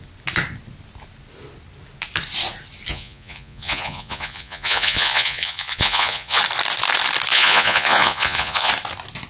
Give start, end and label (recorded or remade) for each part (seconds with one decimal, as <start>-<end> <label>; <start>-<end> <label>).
0.0-2.9 recorded; 2.9-6.4 remade; 6.4-7.3 recorded; 7.3-8.7 remade; 8.7-9.3 recorded